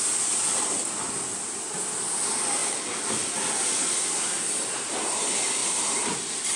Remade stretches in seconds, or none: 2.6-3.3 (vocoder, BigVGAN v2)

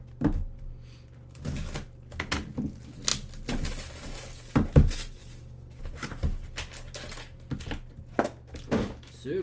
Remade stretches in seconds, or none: none

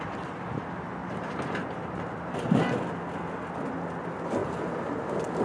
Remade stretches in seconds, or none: 1.0-2.3 (vocoder, BigVGAN v2); 4.4-5.0

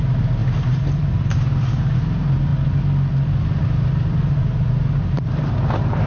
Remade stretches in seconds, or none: 0.0-2.5 (vocoder, BigVGAN v2); 3.5-6.1

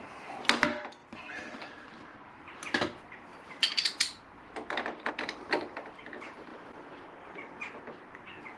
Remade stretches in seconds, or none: none

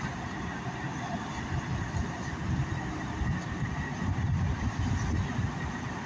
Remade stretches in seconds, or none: 2.0-2.8 (vocoder, BigVGAN v2)

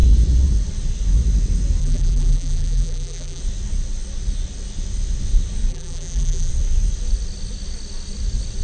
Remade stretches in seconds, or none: 1.8-3.4 (vocoder, BigVGAN v2); 5.7-6.5